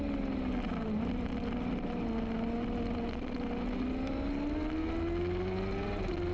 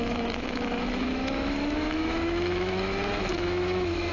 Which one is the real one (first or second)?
first